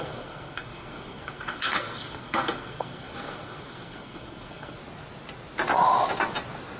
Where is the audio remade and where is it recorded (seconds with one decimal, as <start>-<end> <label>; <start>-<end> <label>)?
0.0-4.8 remade; 4.8-6.8 recorded